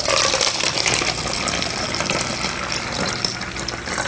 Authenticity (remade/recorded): recorded